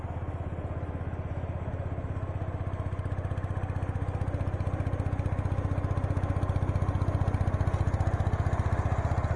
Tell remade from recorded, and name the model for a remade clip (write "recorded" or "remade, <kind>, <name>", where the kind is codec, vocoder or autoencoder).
recorded